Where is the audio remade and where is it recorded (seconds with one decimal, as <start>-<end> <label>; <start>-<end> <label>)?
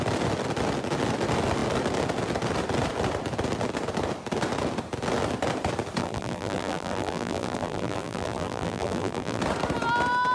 0.0-6.0 recorded; 6.0-9.4 remade; 9.4-10.3 recorded